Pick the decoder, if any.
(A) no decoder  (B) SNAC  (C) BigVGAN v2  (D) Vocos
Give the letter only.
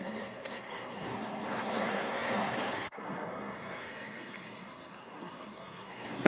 B